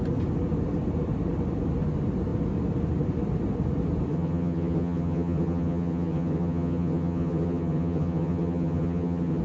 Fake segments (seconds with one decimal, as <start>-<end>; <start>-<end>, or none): 4.1-9.4